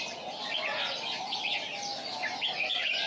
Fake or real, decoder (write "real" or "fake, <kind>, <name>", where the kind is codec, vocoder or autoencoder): real